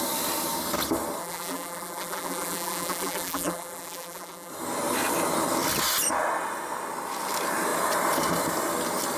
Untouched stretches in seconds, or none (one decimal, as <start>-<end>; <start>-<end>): 0.0-1.2; 4.5-9.2